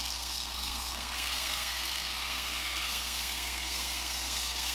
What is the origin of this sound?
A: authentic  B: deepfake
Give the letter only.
B